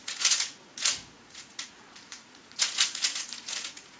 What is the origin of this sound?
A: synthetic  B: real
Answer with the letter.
A